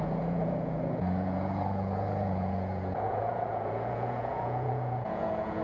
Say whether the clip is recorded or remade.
remade